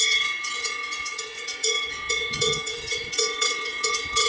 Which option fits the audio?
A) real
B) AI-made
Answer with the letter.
B